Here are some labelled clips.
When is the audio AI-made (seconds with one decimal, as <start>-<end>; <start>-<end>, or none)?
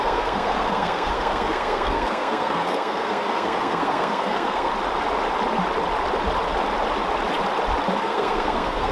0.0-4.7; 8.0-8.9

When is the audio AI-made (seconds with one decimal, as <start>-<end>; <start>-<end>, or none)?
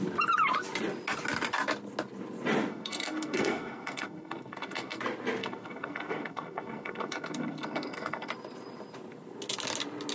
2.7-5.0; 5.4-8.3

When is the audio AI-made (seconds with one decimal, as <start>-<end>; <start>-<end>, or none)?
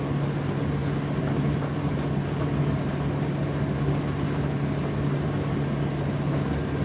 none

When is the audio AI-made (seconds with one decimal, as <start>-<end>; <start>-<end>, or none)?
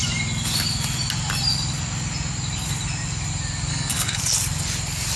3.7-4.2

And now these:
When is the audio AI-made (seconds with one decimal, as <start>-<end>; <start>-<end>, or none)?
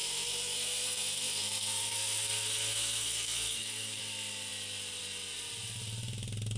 0.0-4.0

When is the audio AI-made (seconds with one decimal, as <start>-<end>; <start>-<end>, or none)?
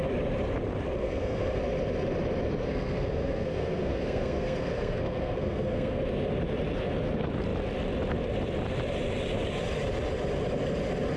1.0-1.6; 2.7-6.0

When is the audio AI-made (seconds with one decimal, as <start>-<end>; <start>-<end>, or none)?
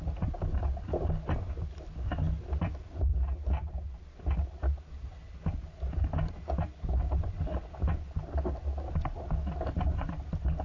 none